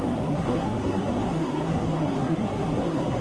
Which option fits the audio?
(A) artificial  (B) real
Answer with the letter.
A